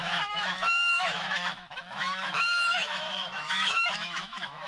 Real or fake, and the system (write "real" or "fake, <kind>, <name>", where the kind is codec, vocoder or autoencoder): fake, autoencoder, DAC-VAE